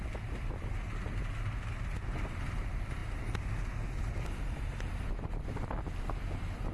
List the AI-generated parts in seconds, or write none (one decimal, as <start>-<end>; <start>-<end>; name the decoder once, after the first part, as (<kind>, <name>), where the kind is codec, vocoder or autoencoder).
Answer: none